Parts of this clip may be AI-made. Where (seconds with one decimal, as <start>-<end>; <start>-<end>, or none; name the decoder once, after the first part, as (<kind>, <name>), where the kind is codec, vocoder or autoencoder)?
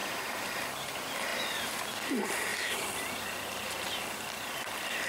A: 0.0-0.9 (vocoder, BigVGAN v2); 1.3-1.9; 2.5-4.0